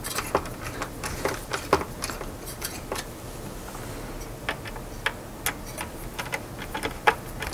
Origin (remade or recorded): recorded